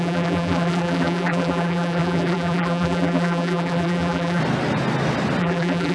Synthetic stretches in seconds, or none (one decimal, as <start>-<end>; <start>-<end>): 0.0-4.4; 5.4-5.9